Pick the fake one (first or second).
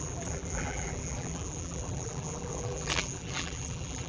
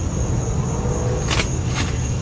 first